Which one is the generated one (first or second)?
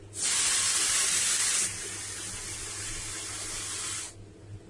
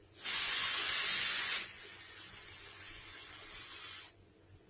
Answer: second